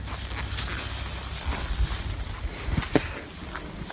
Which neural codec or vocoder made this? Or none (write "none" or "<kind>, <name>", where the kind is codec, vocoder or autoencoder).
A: none